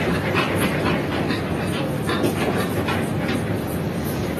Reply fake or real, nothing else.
real